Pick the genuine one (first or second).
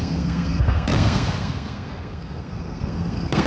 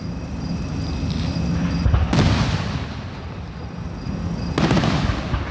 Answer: second